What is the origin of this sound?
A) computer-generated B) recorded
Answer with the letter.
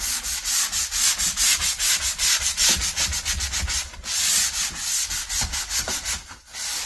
B